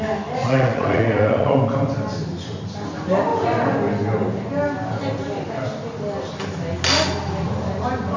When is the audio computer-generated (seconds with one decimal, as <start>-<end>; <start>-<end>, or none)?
0.4-1.6